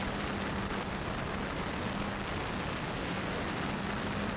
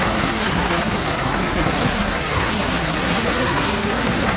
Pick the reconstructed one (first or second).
second